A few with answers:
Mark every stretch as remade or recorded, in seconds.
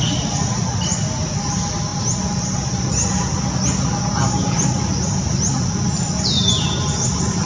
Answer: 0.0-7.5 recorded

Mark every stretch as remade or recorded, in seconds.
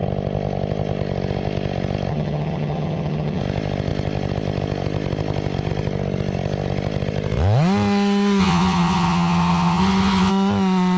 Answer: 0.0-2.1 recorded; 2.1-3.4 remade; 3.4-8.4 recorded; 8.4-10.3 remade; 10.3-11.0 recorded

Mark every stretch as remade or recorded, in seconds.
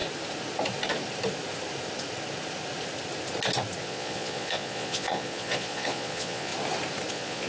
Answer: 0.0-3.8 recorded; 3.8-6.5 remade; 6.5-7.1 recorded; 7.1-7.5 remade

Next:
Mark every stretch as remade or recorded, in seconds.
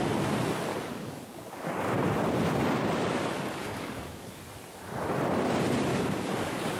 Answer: 0.0-0.7 recorded; 0.7-1.7 remade; 1.7-3.6 recorded; 3.6-4.4 remade; 4.4-5.9 recorded; 5.9-6.8 remade